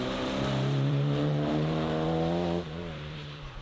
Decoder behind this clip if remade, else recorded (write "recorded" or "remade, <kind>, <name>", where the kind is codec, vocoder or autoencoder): remade, vocoder, BigVGAN v2